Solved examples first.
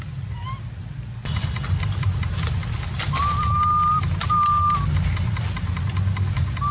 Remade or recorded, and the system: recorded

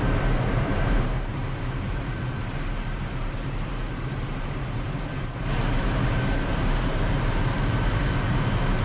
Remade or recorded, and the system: remade, vocoder, BigVGAN v2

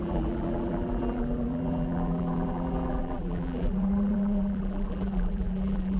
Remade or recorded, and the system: remade, vocoder, BigVGAN v2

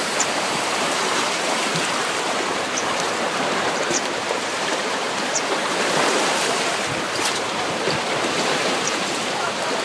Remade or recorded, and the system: remade, vocoder, BigVGAN v2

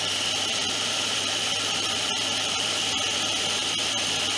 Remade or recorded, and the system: remade, vocoder, BigVGAN v2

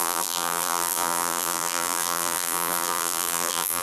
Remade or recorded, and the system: remade, vocoder, BigVGAN v2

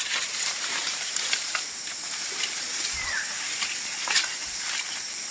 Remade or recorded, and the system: remade, vocoder, BigVGAN v2